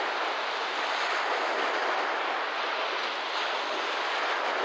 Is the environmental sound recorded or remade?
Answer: recorded